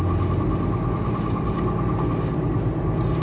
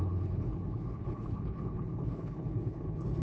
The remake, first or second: second